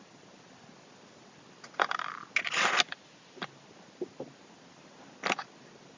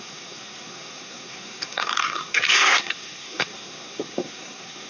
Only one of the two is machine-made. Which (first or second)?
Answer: second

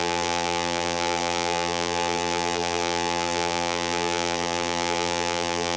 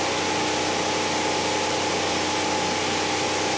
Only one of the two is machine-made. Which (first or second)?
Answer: first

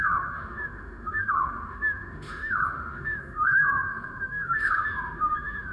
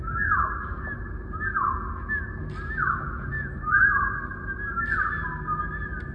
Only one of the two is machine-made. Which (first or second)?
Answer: first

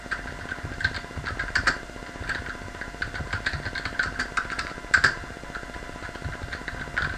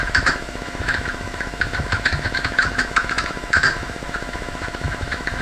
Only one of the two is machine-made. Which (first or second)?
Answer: second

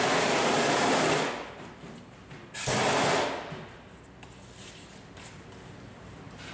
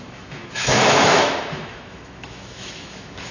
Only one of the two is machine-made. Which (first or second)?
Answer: second